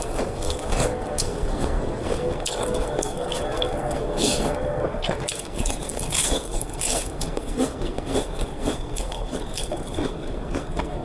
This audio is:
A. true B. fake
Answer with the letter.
B